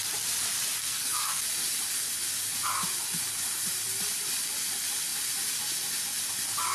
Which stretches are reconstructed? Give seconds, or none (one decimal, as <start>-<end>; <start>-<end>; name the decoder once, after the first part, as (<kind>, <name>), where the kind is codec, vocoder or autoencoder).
0.8-1.4 (codec, SNAC)